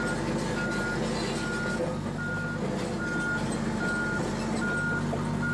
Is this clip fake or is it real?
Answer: real